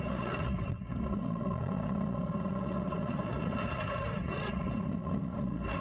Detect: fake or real fake